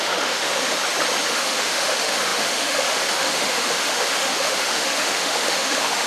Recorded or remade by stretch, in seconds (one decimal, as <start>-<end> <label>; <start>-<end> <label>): 0.0-0.8 remade; 0.8-1.3 recorded; 1.3-6.1 remade